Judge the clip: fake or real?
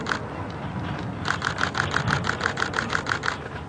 real